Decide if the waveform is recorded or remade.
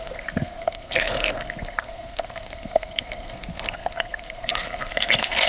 remade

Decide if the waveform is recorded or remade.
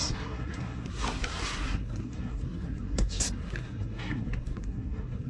remade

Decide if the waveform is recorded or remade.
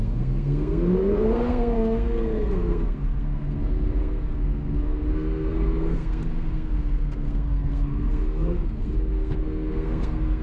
remade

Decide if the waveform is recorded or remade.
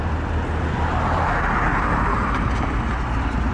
recorded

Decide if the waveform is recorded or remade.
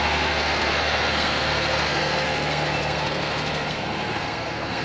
remade